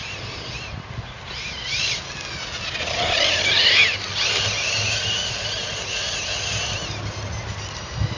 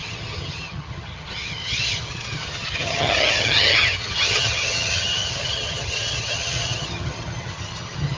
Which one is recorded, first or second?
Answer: first